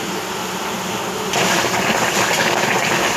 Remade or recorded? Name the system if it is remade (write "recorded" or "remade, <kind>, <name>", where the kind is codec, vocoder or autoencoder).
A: recorded